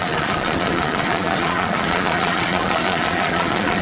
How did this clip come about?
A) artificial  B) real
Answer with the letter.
A